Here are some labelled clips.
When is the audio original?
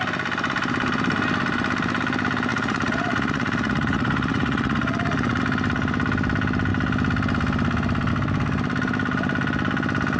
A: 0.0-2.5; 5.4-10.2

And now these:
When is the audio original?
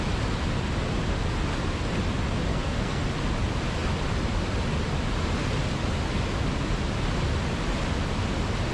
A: 0.0-2.5; 3.0-8.7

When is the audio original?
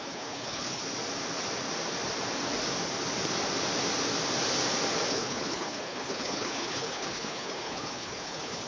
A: 0.8-5.1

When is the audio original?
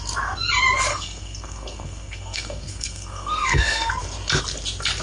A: 0.0-0.9; 3.9-5.0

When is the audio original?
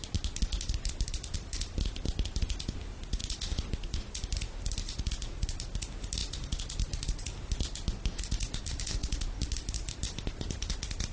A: 0.0-11.1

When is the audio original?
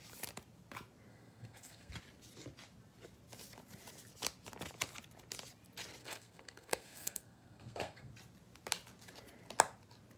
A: 0.0-1.1; 1.9-6.0; 8.1-10.2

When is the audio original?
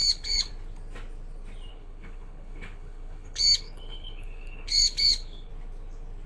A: 0.5-1.7; 5.5-6.3